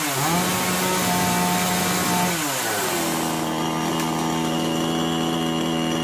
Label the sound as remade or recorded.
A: recorded